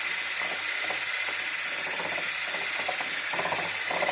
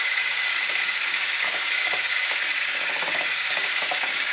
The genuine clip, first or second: first